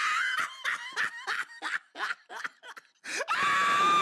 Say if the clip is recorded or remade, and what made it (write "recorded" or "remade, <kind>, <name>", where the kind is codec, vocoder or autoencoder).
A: recorded